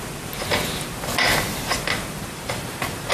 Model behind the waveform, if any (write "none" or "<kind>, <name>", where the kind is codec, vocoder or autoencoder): none